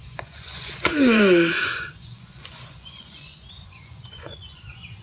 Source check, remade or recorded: remade